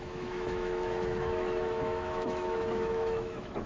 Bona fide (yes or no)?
no